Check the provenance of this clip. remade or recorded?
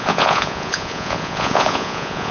remade